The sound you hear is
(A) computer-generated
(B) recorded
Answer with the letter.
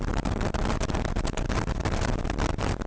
B